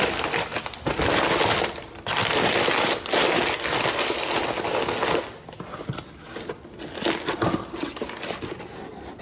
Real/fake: real